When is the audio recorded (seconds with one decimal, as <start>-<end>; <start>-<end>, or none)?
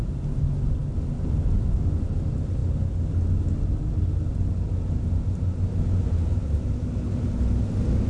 0.0-8.1